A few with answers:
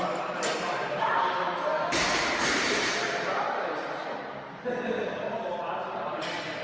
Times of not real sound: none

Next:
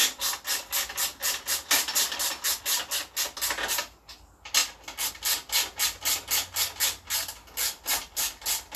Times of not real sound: none

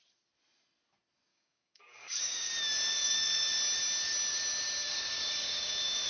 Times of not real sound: 1.3-2.5 (codec, DAC); 2.9-3.5; 4.9-6.1